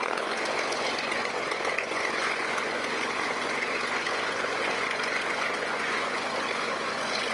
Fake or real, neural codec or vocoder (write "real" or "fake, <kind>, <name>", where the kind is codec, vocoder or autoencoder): fake, vocoder, Vocos